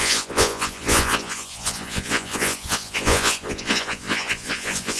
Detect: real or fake fake